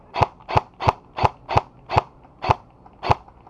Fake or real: real